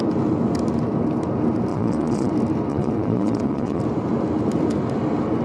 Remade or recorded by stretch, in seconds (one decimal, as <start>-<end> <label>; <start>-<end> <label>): 0.0-1.7 recorded; 1.7-2.3 remade; 2.3-2.7 recorded; 2.7-3.8 remade; 3.8-5.4 recorded